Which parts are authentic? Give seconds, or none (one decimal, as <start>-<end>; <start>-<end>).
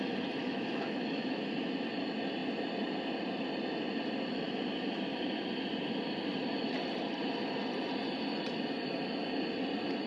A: 0.0-0.4; 1.4-10.1